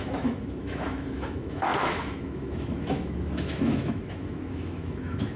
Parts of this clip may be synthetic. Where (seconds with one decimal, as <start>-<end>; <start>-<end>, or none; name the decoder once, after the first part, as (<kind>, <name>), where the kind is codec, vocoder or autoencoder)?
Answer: 0.0-5.4 (autoencoder, DAC-VAE)